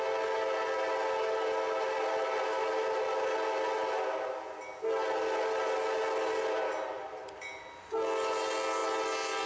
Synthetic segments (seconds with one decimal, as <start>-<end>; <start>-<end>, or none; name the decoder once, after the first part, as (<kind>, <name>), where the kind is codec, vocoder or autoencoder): none

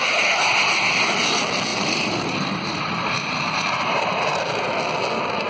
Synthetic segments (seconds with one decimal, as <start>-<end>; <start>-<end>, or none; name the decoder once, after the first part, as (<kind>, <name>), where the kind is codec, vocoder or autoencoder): 1.7-4.4 (vocoder, BigVGAN v2)

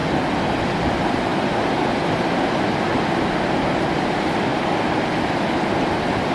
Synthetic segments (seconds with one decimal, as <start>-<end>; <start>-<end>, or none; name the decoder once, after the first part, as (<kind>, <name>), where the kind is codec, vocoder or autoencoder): 4.5-5.7 (vocoder, BigVGAN v2)

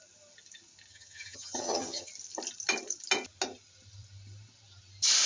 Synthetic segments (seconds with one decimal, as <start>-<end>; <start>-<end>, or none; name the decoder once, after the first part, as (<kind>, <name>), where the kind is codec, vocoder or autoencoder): 0.9-2.1 (vocoder, HiFi-GAN)

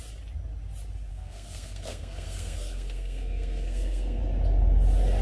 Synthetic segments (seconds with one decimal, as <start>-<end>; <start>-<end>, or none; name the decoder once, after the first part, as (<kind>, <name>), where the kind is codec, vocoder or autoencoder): 1.1-4.2 (codec, SNAC)

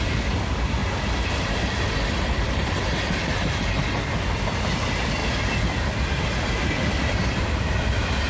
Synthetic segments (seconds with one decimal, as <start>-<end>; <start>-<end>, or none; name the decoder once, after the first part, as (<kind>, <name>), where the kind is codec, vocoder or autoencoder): 0.8-3.5 (vocoder, BigVGAN v2)